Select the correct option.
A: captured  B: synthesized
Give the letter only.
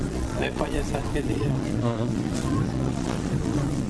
B